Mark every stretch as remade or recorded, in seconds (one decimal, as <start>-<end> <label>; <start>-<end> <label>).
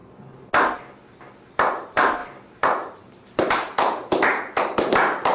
0.0-1.5 recorded; 1.5-5.3 remade